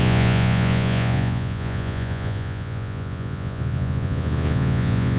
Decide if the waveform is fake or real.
fake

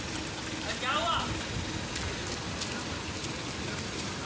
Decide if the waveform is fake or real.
real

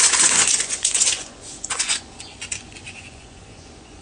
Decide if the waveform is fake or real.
fake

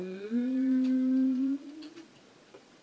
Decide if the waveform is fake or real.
fake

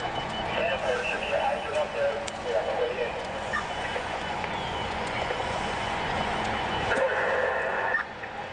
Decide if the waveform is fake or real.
fake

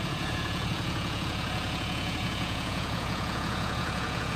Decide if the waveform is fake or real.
fake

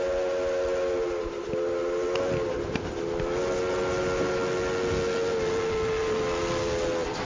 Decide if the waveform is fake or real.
real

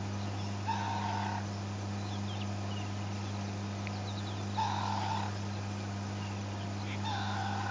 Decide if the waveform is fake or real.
real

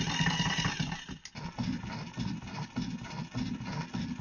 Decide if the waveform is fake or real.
real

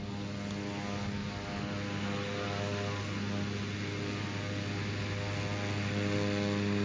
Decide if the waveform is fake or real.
real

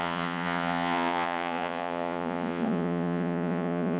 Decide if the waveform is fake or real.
fake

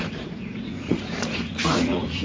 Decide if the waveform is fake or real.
fake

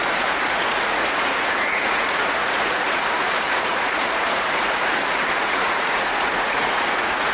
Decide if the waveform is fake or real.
fake